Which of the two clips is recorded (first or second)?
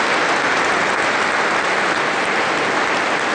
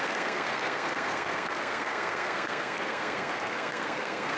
first